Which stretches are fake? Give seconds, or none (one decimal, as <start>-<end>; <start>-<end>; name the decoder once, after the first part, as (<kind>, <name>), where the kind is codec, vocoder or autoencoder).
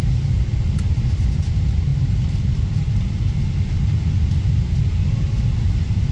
none